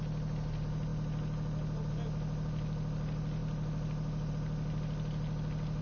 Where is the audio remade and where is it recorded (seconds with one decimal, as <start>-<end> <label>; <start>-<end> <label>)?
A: 0.0-5.8 recorded